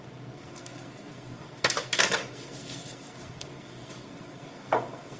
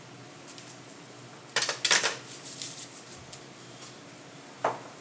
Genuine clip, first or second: second